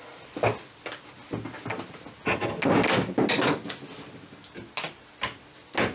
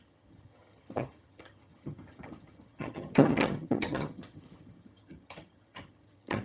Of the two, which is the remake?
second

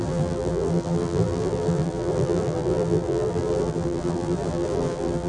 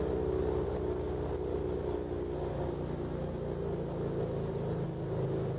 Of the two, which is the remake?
first